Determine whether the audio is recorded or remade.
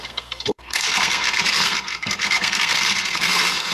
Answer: remade